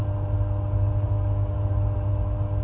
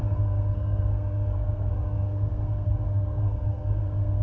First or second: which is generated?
second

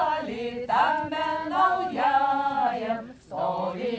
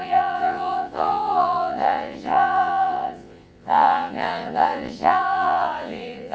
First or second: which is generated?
second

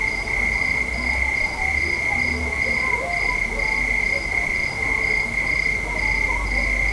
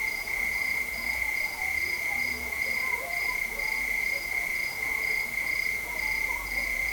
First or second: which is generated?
second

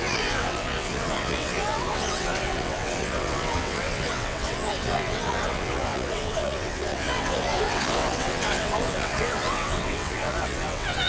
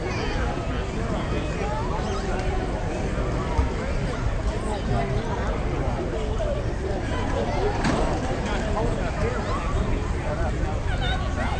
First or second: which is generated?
first